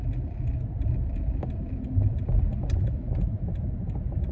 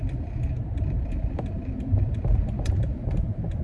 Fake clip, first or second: second